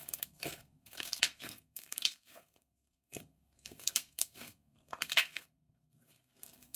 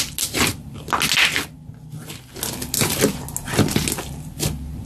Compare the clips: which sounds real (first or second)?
second